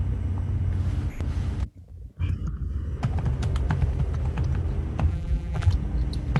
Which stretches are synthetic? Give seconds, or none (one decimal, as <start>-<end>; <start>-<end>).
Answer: 5.1-5.7